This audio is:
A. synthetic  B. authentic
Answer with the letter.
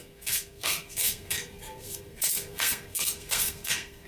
A